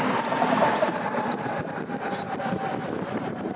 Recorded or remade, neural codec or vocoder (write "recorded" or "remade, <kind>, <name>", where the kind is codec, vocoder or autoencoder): recorded